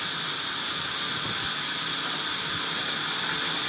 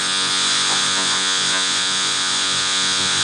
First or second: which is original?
first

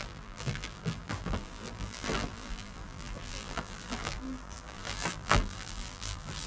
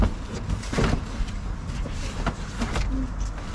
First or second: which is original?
second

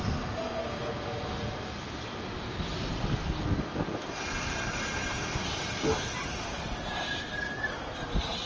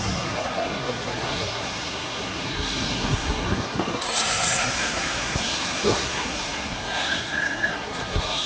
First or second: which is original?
first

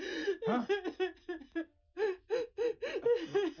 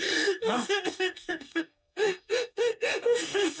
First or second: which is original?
first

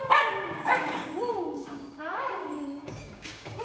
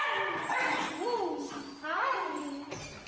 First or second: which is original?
second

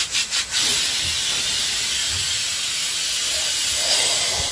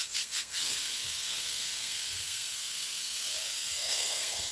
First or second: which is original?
first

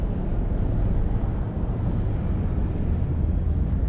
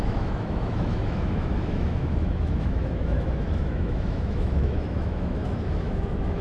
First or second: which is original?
first